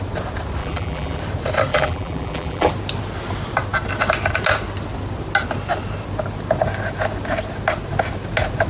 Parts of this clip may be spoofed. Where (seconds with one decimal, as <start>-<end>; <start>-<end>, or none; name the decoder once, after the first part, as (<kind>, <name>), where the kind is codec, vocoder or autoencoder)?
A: 0.6-1.2 (vocoder, BigVGAN v2); 1.7-2.7

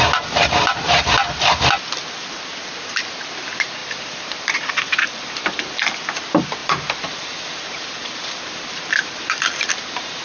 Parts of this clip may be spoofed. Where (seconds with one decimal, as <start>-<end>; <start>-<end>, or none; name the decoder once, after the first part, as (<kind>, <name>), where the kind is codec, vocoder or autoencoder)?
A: 3.8-5.7 (vocoder, BigVGAN v2); 6.6-10.2

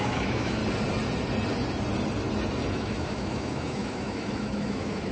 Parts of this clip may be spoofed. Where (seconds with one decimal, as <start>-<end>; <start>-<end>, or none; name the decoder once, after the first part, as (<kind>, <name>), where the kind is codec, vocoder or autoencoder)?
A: 0.0-0.6 (autoencoder, DAC-VAE); 2.7-5.1

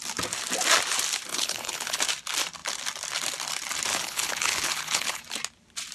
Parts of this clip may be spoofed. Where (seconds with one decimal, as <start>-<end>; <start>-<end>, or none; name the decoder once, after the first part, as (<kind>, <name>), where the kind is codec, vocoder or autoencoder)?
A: 1.3-2.0 (codec, HILCodec); 3.9-5.2

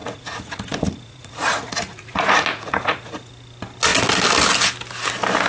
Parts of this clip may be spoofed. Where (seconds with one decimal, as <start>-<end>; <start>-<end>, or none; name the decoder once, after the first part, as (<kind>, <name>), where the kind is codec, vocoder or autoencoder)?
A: 0.0-3.3 (vocoder, Vocos)

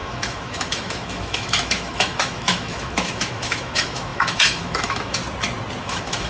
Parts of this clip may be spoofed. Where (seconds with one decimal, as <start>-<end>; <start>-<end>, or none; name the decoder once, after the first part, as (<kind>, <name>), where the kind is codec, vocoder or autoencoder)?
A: 0.0-5.2 (autoencoder, DAC-VAE); 5.8-6.3

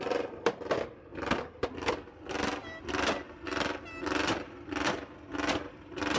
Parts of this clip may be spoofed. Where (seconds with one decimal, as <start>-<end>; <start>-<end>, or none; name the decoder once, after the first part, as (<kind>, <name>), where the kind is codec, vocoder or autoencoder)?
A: 1.1-1.9 (vocoder, BigVGAN v2)